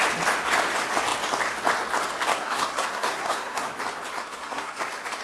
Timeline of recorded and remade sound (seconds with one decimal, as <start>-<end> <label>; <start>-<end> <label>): 0.0-2.3 recorded; 2.3-3.7 remade; 3.7-4.2 recorded; 4.2-4.8 remade; 4.8-5.2 recorded